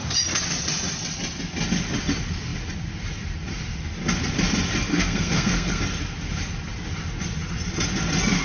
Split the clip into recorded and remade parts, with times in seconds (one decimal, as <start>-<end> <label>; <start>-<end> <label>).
0.0-4.9 recorded; 4.9-5.8 remade; 5.8-8.4 recorded